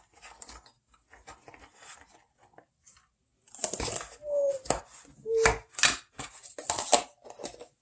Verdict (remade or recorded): recorded